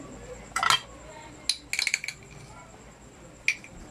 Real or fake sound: real